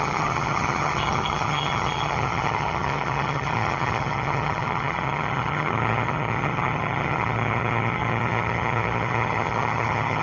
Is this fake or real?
fake